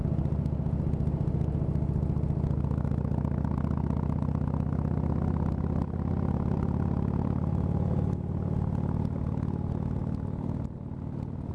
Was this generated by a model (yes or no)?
no